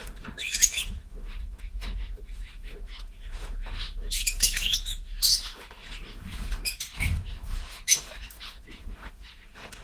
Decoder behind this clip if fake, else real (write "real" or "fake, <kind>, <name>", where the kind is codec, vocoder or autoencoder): fake, autoencoder, DAC-VAE